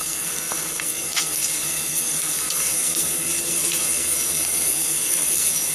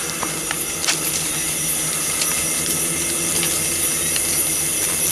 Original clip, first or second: second